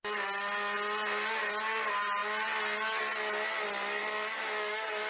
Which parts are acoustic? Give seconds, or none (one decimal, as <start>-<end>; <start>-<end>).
0.0-4.0